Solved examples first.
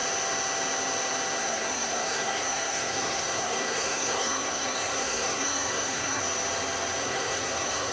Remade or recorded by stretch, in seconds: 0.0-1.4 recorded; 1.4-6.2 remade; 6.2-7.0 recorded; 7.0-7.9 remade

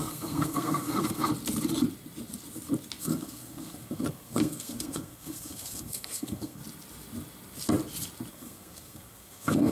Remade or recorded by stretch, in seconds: 0.0-1.3 remade; 1.3-3.0 recorded; 3.0-6.6 remade; 6.6-8.3 recorded; 8.3-9.7 remade

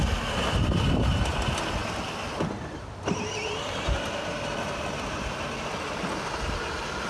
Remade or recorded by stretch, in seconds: 0.0-7.1 recorded

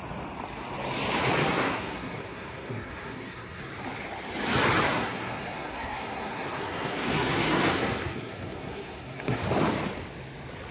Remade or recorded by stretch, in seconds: 0.0-1.4 recorded; 1.4-3.6 remade; 3.6-4.9 recorded; 4.9-9.4 remade; 9.4-10.7 recorded